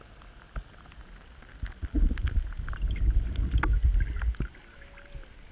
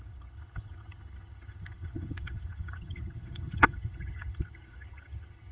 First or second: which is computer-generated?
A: second